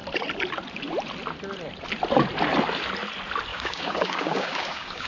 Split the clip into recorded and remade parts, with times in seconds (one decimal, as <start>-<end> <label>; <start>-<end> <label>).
0.0-3.5 recorded; 3.5-5.1 remade